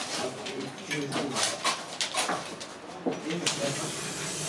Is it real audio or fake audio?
real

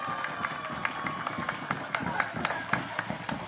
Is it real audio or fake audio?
real